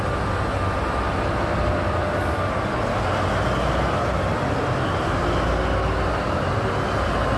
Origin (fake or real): real